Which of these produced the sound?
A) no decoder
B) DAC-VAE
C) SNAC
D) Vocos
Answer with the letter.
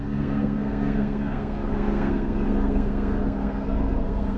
C